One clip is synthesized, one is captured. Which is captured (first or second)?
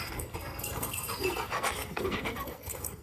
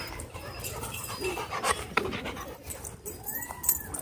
second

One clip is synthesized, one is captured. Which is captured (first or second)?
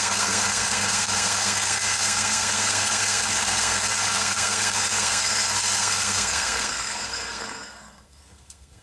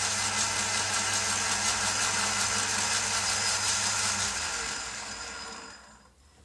second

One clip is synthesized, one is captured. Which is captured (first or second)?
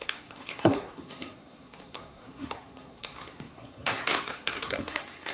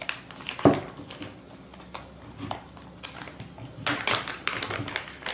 second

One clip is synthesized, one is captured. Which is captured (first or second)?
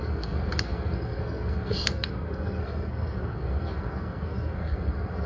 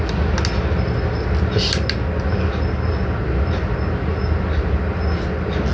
second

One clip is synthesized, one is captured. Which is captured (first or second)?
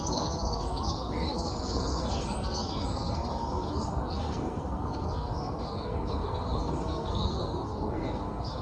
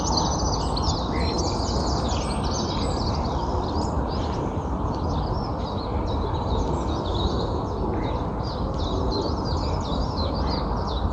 second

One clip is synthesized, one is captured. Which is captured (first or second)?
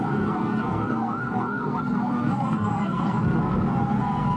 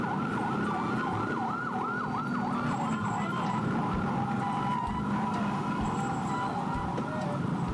second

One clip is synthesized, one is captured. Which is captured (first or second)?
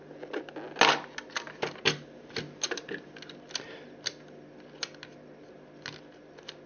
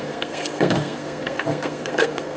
first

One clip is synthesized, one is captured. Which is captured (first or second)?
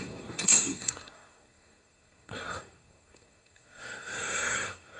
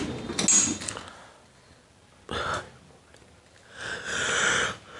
second